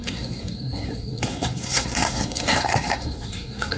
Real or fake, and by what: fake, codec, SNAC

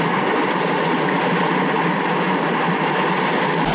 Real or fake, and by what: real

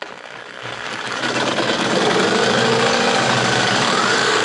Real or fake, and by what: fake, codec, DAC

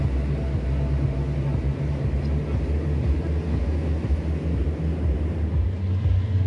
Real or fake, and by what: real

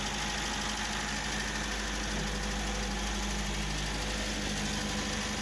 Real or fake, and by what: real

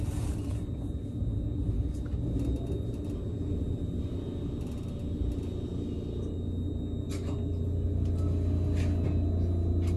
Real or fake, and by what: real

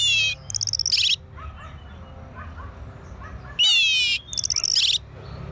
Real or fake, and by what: real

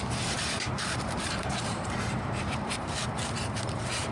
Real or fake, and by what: fake, vocoder, BigVGAN v2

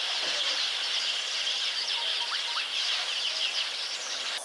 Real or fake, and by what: fake, vocoder, BigVGAN v2